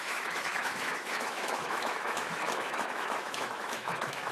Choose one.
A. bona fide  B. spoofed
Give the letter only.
B